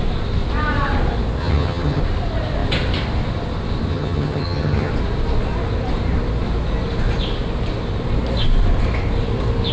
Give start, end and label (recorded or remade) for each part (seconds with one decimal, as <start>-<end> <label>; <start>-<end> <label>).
0.0-1.4 recorded; 1.4-2.0 remade; 2.0-3.9 recorded; 3.9-4.9 remade; 4.9-9.7 recorded